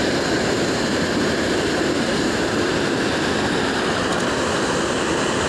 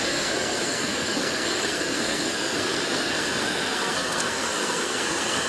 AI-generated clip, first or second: second